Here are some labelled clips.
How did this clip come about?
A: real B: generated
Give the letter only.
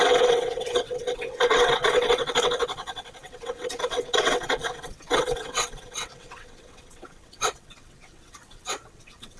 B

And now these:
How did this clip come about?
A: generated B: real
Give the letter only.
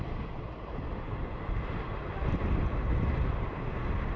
B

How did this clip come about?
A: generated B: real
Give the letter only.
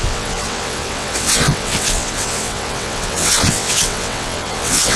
A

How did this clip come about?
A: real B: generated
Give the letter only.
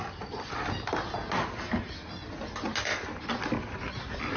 A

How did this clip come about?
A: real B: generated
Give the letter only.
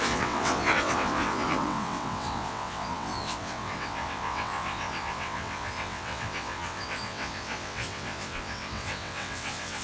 B